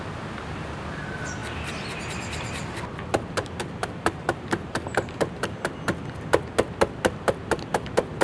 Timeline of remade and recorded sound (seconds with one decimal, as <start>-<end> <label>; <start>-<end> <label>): 0.0-3.8 recorded; 3.8-5.6 remade; 5.6-8.2 recorded